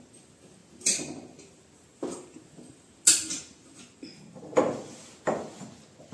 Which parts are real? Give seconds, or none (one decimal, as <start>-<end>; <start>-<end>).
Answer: 0.0-6.1